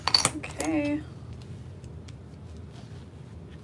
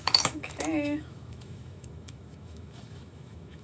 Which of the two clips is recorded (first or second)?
first